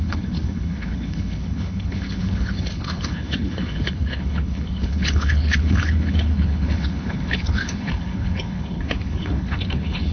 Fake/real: fake